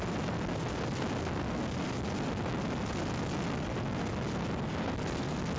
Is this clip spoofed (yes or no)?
no